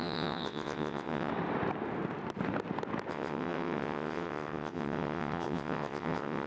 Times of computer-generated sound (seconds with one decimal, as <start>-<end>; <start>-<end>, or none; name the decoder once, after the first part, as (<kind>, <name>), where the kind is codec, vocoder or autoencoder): 0.0-1.3 (vocoder, WaveNeXt); 3.1-6.5